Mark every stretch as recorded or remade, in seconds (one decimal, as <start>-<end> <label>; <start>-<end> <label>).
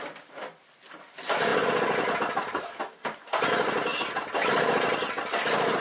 0.0-5.8 recorded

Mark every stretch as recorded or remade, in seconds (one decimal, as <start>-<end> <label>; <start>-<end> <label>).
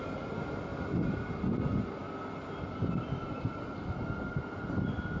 0.0-5.2 recorded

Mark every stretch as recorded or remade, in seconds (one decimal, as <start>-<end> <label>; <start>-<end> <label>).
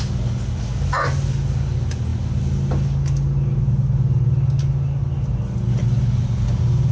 0.0-6.9 recorded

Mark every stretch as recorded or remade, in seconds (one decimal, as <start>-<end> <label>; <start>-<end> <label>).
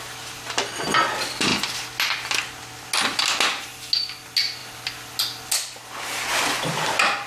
0.0-7.3 recorded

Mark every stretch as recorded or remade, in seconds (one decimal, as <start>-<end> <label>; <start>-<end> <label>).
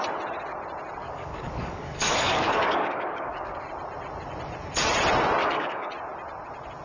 0.0-1.0 recorded; 1.0-3.6 remade; 3.6-5.4 recorded; 5.4-5.9 remade; 5.9-6.8 recorded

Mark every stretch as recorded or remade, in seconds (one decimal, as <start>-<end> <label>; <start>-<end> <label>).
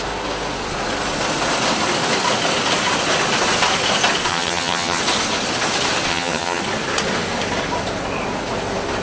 0.0-4.3 recorded; 4.3-5.0 remade; 5.0-6.1 recorded; 6.1-6.6 remade; 6.6-9.0 recorded